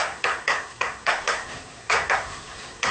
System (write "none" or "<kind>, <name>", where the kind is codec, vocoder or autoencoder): codec, SNAC